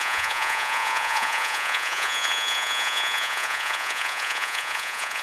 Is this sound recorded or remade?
remade